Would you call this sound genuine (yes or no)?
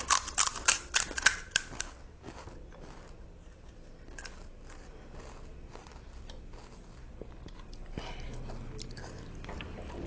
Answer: yes